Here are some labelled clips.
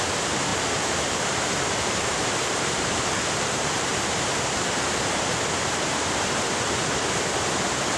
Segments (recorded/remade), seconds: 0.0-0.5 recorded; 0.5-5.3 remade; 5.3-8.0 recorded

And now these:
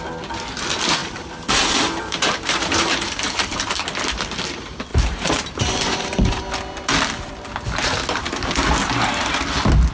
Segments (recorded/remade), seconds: 0.0-1.0 recorded; 1.0-3.8 remade; 3.8-4.9 recorded; 4.9-6.4 remade; 6.4-9.9 recorded